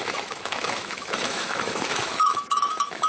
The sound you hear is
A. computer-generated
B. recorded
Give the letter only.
A